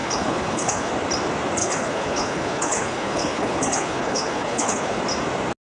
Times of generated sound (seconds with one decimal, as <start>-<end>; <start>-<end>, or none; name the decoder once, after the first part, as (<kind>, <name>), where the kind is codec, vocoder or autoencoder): 0.0-0.9 (codec, HILCodec); 1.6-5.0